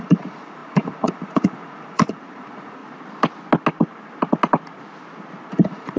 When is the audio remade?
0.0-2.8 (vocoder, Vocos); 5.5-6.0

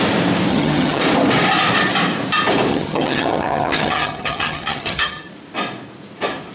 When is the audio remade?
0.5-1.0 (vocoder, HiFi-GAN); 2.7-5.3

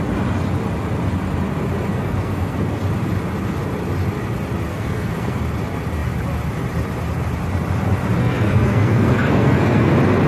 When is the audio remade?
1.9-2.8 (codec, SNAC); 4.7-5.4; 8.2-9.9

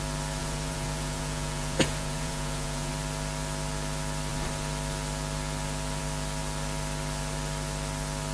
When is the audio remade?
0.4-2.9 (vocoder, Vocos)

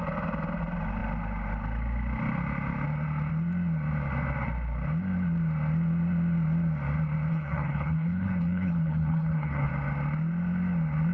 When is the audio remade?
7.3-9.7 (codec, HILCodec)